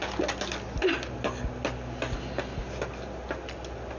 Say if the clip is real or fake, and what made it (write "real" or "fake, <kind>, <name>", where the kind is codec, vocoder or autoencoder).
real